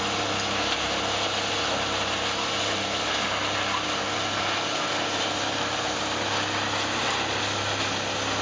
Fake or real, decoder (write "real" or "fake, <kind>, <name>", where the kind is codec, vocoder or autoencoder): real